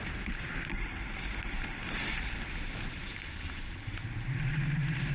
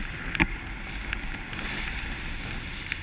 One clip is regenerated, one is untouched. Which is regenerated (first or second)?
first